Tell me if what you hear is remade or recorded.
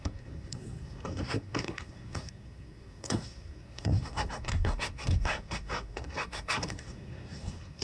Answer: remade